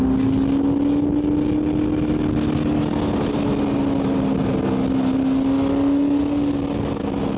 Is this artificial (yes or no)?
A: no